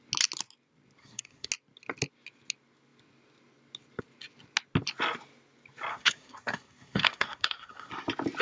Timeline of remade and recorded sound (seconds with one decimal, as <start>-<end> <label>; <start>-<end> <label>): 0.0-1.0 recorded; 1.0-1.5 remade; 1.5-5.9 recorded; 5.9-7.9 remade; 7.9-8.4 recorded